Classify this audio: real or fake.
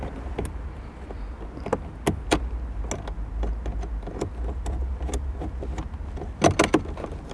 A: real